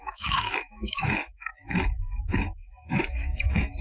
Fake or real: fake